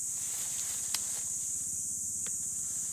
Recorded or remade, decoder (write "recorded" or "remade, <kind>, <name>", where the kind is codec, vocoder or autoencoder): recorded